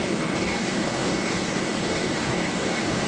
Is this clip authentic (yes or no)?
no